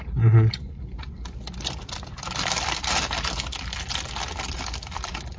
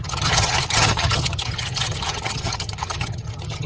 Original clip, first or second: first